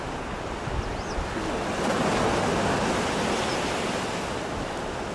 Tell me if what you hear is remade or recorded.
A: recorded